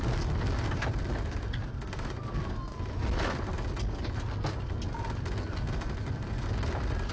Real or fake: real